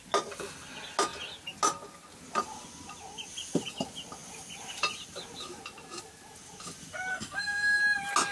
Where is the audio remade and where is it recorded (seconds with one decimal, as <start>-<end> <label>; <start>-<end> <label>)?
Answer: 0.0-7.1 recorded; 7.1-7.8 remade; 7.8-8.3 recorded